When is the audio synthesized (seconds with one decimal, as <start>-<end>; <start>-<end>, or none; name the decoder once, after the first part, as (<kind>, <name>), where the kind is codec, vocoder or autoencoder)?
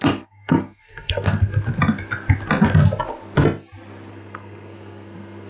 0.0-1.5 (codec, SNAC); 4.1-5.5